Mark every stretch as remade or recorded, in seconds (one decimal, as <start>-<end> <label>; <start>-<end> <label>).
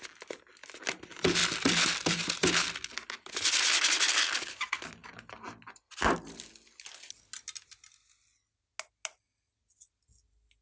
0.0-10.6 recorded